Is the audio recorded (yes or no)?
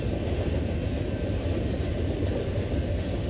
yes